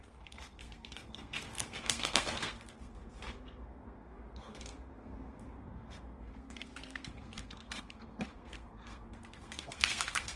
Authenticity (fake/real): fake